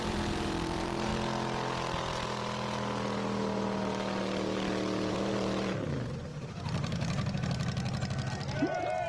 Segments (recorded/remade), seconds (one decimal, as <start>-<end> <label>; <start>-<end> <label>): 0.0-1.1 remade; 1.1-5.1 recorded; 5.1-6.3 remade; 6.3-8.3 recorded; 8.3-9.1 remade

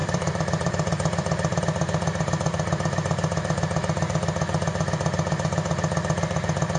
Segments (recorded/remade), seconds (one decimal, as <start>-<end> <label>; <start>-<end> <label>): 0.0-1.6 remade; 1.6-6.8 recorded

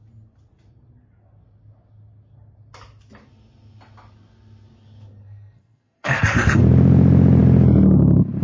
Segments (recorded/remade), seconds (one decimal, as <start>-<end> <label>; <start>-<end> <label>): 0.0-5.2 recorded; 5.2-6.6 remade; 6.6-8.4 recorded

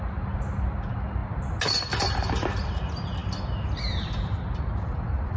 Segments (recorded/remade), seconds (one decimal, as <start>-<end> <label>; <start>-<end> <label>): 0.0-5.4 recorded

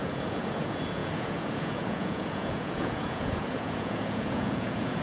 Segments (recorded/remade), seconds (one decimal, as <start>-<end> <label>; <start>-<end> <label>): 0.0-5.0 remade